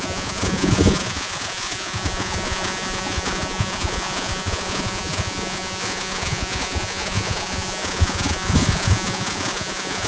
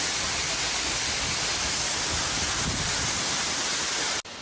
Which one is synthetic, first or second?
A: first